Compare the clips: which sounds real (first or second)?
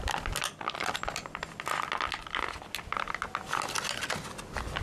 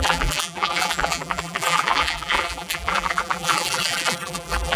first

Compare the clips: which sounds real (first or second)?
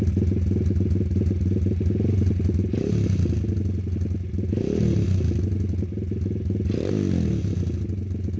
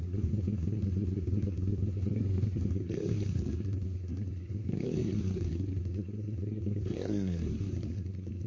first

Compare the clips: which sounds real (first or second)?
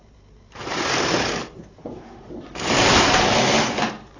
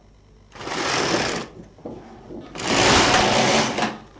second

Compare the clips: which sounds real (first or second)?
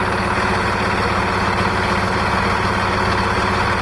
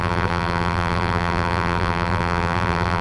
first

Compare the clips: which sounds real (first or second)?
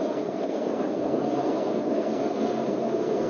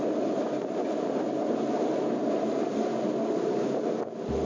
second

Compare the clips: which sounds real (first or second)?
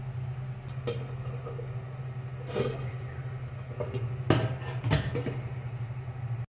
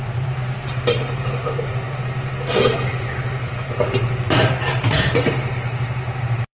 first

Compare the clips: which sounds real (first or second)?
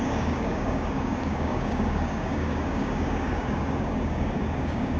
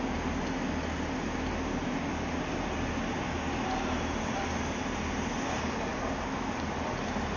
second